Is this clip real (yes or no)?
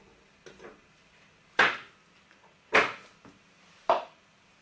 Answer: yes